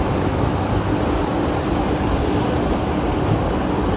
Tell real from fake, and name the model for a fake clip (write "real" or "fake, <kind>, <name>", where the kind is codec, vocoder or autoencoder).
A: real